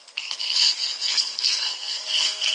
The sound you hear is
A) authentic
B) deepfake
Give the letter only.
B